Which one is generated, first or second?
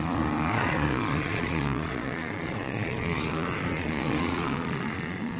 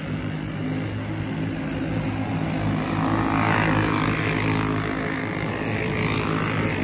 first